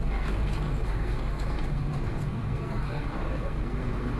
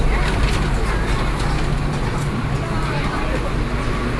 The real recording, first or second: second